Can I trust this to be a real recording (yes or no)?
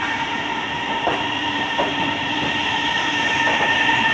no